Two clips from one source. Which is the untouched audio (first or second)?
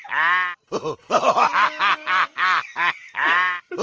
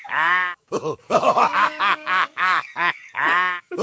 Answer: first